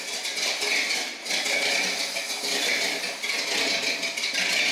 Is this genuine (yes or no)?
yes